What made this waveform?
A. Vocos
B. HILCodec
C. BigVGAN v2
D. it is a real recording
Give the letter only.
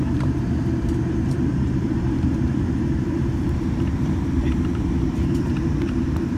C